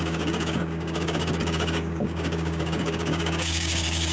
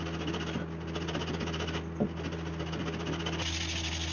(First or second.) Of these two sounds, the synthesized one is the first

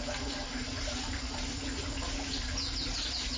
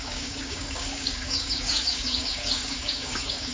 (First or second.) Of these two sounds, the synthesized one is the second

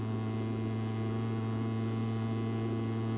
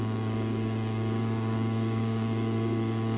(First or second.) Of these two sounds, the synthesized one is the second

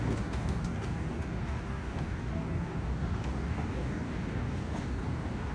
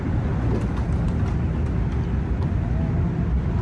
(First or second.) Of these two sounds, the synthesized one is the first